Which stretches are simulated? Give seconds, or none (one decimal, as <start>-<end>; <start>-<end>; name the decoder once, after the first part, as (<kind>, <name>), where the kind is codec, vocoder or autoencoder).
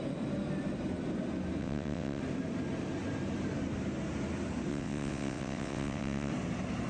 1.6-2.2 (vocoder, WaveNeXt); 4.7-6.3